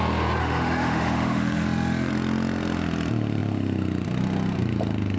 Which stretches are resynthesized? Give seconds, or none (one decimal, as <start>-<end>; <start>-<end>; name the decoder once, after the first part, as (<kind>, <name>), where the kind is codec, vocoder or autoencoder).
0.4-2.1 (autoencoder, DAC-VAE)